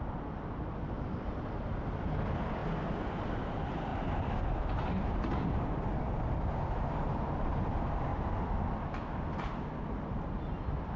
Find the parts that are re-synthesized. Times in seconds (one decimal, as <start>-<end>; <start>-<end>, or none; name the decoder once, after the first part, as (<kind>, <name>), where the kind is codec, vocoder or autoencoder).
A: none